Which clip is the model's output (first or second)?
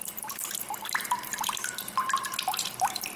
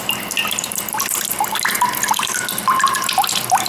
first